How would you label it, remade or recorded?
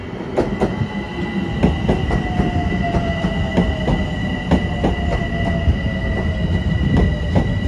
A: recorded